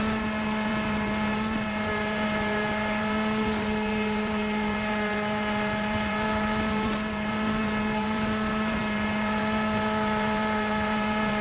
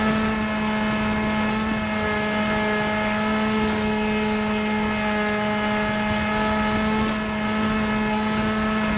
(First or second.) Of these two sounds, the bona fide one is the second